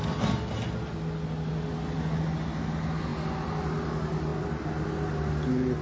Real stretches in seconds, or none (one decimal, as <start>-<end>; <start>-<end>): 0.0-5.8